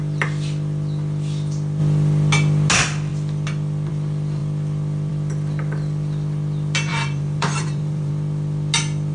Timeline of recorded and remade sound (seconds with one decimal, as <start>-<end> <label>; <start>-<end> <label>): 0.0-6.9 recorded; 6.9-8.1 remade; 8.1-9.1 recorded